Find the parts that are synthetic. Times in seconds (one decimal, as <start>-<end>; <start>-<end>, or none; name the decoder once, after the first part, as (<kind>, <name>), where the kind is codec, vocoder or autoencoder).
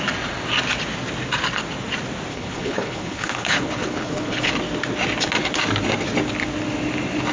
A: 2.3-4.5 (codec, HILCodec)